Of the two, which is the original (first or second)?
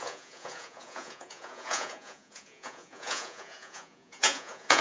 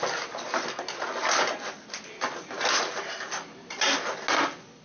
second